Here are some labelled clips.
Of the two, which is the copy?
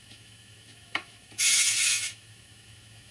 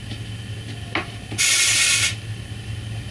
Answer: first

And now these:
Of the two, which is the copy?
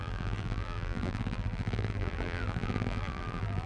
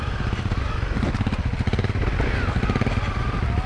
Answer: first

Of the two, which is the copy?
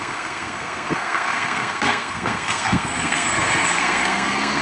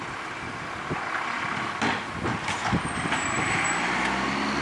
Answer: first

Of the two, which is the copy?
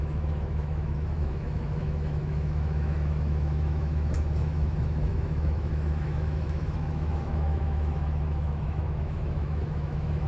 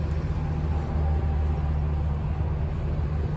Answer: first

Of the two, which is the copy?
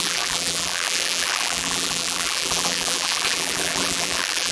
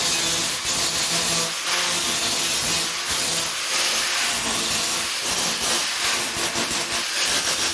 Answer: first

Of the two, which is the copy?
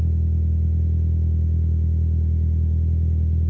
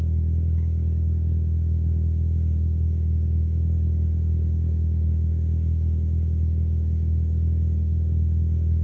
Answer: second